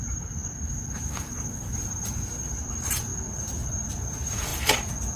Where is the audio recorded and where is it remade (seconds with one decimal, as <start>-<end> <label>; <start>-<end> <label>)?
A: 0.0-3.1 remade; 3.1-4.0 recorded; 4.0-4.5 remade; 4.5-5.2 recorded